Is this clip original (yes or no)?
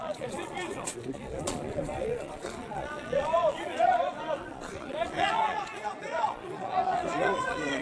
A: no